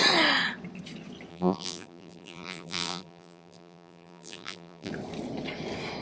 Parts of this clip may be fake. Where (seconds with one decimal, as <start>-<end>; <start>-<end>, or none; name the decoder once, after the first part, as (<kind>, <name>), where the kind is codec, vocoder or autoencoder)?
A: 1.3-4.9 (vocoder, BigVGAN v2)